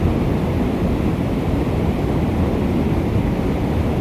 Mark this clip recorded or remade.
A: recorded